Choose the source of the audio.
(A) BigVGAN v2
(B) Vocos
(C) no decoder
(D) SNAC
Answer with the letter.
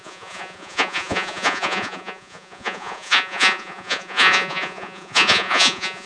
B